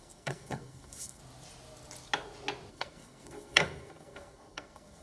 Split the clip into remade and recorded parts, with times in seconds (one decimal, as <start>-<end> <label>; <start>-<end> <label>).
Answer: 0.0-1.2 remade; 1.2-2.7 recorded; 2.7-5.0 remade

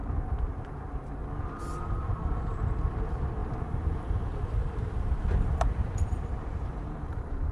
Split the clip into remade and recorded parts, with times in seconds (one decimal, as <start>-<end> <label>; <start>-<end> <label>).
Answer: 0.0-1.2 remade; 1.2-1.8 recorded; 1.8-7.5 remade

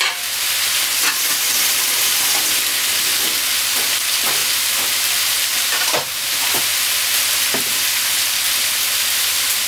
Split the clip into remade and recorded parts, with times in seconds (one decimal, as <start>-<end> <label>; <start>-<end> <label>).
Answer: 0.0-4.4 recorded; 4.4-6.6 remade; 6.6-9.7 recorded

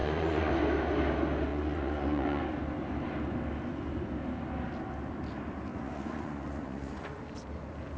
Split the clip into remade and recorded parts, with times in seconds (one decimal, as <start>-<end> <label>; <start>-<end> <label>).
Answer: 0.0-0.5 remade; 0.5-1.5 recorded; 1.5-2.4 remade; 2.4-5.7 recorded; 5.7-7.2 remade; 7.2-8.0 recorded

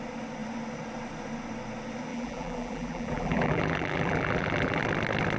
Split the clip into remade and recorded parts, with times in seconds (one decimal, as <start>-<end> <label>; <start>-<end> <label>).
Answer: 0.0-2.1 recorded; 2.1-4.8 remade; 4.8-5.4 recorded

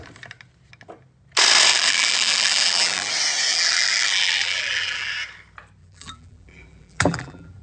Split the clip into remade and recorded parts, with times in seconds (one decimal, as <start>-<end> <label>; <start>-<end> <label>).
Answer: 0.0-1.7 recorded; 1.7-3.1 remade; 3.1-3.5 recorded; 3.5-5.1 remade; 5.1-5.8 recorded; 5.8-7.6 remade

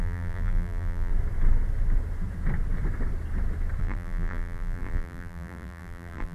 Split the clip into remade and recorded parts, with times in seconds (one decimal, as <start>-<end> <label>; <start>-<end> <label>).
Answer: 0.0-1.1 remade; 1.1-3.8 recorded; 3.8-6.3 remade

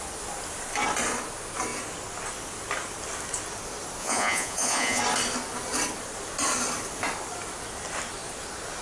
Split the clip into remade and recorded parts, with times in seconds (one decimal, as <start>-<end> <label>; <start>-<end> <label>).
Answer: 0.0-4.0 recorded; 4.0-5.0 remade; 5.0-8.8 recorded